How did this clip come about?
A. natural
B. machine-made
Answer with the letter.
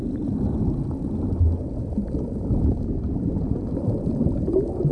A